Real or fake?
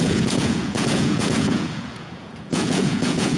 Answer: fake